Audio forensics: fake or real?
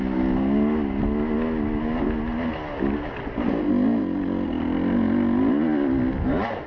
real